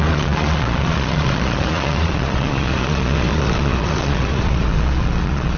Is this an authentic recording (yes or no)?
no